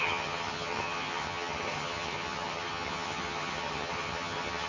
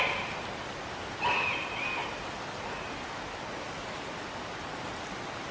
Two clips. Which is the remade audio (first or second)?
first